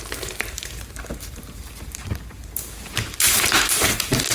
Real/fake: fake